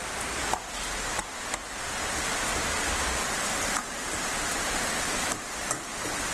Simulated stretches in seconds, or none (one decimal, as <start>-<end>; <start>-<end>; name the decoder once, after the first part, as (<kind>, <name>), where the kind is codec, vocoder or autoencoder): none